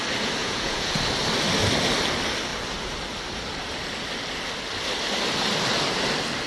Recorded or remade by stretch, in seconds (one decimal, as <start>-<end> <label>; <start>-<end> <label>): 0.0-0.4 recorded; 0.4-1.0 remade; 1.0-6.5 recorded